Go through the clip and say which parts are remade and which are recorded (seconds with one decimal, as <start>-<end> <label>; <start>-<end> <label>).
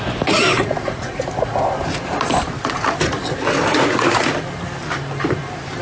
0.0-0.5 recorded; 0.5-1.2 remade; 1.2-3.7 recorded; 3.7-4.3 remade; 4.3-5.8 recorded